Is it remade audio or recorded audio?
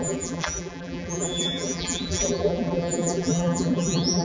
remade